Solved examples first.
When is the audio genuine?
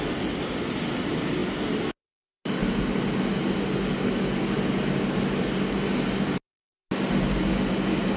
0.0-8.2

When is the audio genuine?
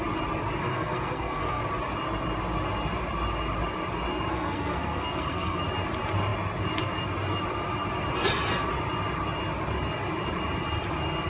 0.0-0.6; 1.6-4.3; 5.6-11.3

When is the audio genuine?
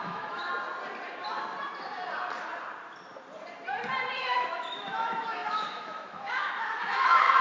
0.5-4.2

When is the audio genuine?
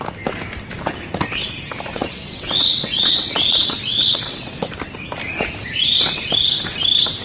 0.0-1.9; 4.7-7.2